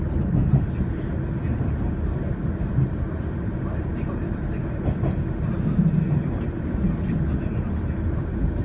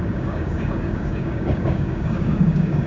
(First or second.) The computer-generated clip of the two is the second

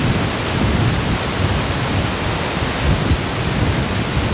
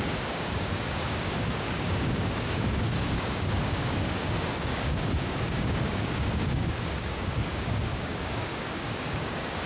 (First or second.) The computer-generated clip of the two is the second